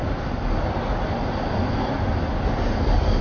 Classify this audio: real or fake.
real